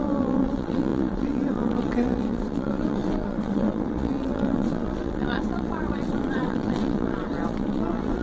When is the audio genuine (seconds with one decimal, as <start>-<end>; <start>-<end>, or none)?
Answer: none